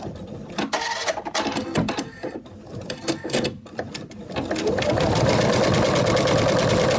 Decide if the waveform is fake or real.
real